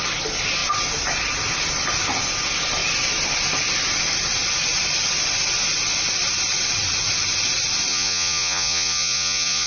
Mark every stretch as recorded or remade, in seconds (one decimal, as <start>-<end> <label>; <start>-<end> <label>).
0.0-7.9 recorded; 7.9-9.7 remade